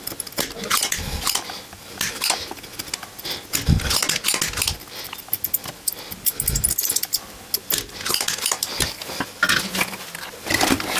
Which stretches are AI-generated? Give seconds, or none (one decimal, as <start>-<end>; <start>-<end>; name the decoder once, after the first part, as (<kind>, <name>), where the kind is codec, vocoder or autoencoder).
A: 0.0-2.1 (vocoder, BigVGAN v2); 4.9-11.0